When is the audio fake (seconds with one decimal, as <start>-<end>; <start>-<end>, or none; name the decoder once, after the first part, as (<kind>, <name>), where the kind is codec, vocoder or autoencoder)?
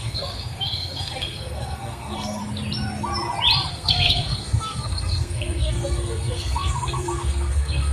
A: 0.0-2.4 (codec, SNAC); 3.7-7.9